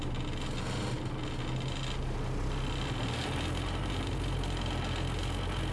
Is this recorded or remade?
recorded